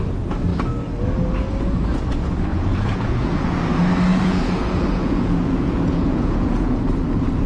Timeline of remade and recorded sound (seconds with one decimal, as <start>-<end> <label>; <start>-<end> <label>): 0.0-2.5 recorded; 2.5-3.5 remade; 3.5-4.1 recorded; 4.1-6.8 remade; 6.8-7.5 recorded